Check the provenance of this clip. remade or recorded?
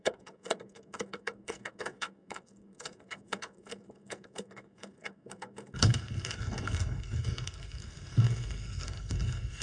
remade